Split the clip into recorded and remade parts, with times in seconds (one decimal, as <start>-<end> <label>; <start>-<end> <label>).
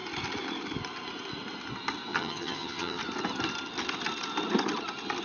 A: 0.0-2.1 recorded; 2.1-3.0 remade; 3.0-5.2 recorded